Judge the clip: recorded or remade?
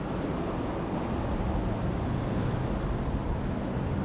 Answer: recorded